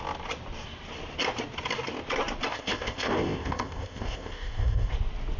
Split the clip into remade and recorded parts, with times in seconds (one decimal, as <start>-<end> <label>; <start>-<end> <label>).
0.0-2.5 recorded; 2.5-4.9 remade; 4.9-5.4 recorded